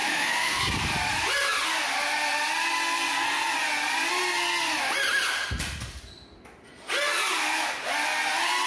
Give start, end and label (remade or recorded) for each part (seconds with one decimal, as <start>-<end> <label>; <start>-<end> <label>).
0.0-0.6 remade; 0.6-8.7 recorded

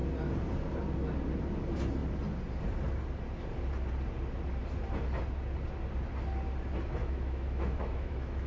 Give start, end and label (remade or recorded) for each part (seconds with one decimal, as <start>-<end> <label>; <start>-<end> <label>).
0.0-7.0 recorded; 7.0-8.5 remade

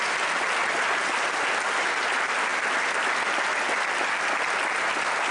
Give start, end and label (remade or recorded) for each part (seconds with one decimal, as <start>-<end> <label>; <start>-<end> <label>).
0.0-5.3 recorded

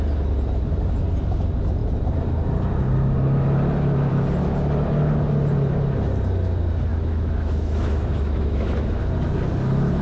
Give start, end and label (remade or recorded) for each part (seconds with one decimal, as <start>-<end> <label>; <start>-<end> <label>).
0.0-6.9 recorded; 6.9-9.0 remade; 9.0-10.0 recorded